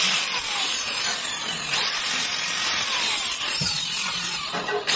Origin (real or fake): fake